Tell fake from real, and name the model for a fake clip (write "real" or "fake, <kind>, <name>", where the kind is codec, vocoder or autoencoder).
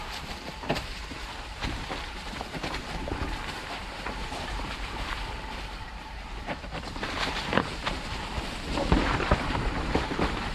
fake, vocoder, BigVGAN v2